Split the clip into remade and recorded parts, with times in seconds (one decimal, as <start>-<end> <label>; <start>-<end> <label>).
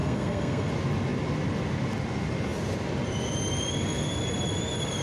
0.0-0.7 remade; 0.7-5.0 recorded